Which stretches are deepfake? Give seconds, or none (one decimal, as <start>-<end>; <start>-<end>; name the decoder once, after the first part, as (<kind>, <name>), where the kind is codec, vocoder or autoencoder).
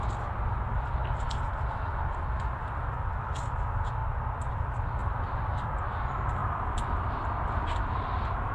5.0-5.8 (vocoder, BigVGAN v2); 6.4-7.1